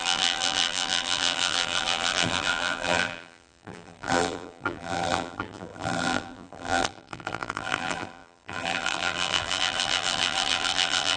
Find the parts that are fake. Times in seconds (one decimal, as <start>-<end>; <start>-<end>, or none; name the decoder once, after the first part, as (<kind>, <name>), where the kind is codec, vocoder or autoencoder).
0.0-11.2 (vocoder, BigVGAN v2)